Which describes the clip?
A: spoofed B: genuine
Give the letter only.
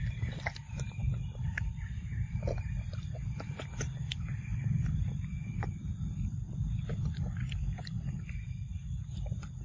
B